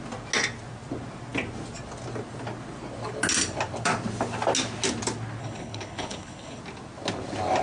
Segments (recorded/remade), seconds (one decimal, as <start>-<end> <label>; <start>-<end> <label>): 0.0-5.4 recorded; 5.4-6.6 remade; 6.6-7.6 recorded